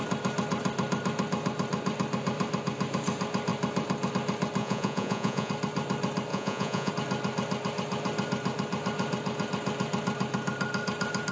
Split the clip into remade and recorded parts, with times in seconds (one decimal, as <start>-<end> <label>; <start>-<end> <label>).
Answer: 0.0-4.6 recorded; 4.6-5.5 remade; 5.5-6.3 recorded; 6.3-6.9 remade; 6.9-11.3 recorded